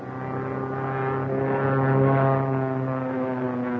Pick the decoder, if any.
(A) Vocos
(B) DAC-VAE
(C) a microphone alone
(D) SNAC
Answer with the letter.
C